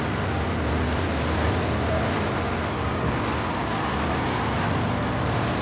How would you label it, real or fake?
real